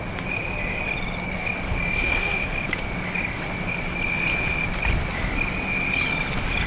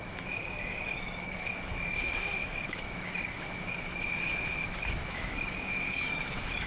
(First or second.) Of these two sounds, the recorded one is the first